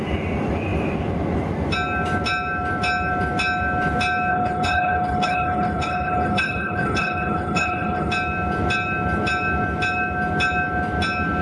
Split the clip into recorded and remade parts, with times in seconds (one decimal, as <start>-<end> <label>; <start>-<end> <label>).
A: 0.0-4.3 recorded; 4.3-8.1 remade; 8.1-11.4 recorded